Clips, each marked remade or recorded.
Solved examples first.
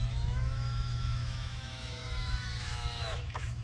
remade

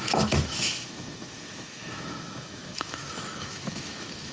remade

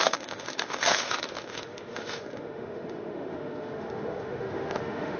remade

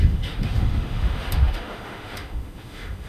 remade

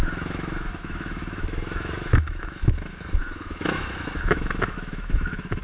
remade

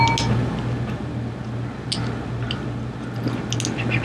recorded